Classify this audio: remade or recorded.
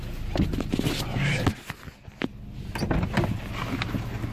recorded